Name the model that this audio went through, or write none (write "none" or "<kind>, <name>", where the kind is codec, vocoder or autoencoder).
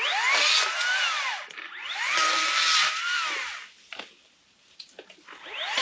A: none